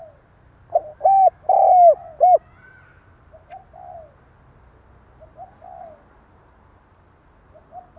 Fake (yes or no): no